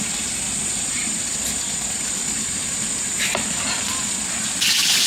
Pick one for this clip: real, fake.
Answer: real